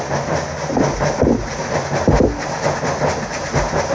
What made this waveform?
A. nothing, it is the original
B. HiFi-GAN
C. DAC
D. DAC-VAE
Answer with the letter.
A